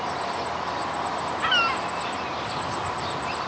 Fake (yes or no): no